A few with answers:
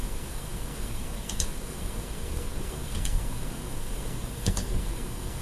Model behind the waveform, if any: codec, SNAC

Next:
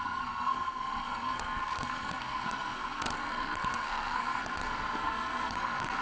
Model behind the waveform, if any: codec, SNAC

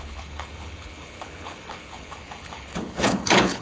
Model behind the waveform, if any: codec, HILCodec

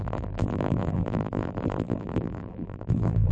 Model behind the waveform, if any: vocoder, BigVGAN v2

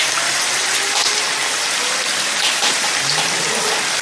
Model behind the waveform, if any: none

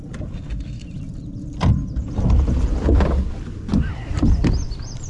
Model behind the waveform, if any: none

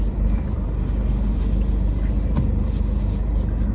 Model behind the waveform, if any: none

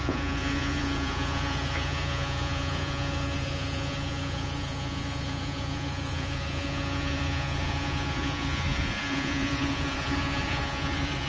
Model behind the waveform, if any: vocoder, Vocos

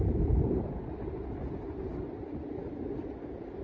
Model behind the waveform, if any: none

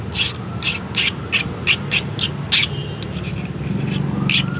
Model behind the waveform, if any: none